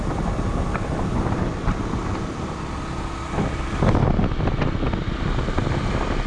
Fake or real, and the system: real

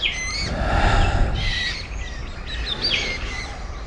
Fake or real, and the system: real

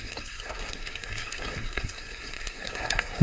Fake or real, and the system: fake, codec, SNAC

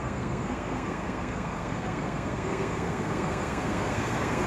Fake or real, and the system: fake, codec, SNAC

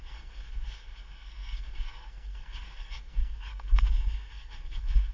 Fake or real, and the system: fake, codec, SNAC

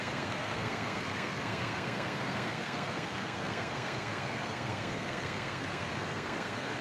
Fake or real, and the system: fake, codec, SNAC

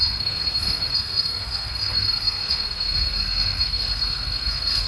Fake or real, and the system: fake, codec, SNAC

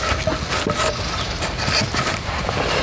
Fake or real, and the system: real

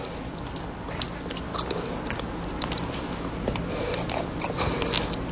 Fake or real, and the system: real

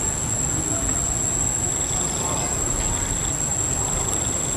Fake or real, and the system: real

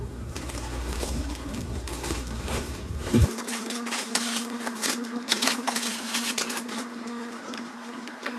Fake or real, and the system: fake, codec, SNAC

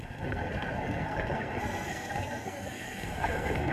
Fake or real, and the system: fake, codec, SNAC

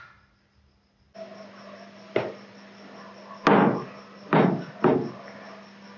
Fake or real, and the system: real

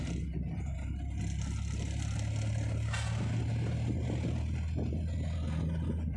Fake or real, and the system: real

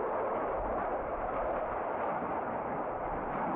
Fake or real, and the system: real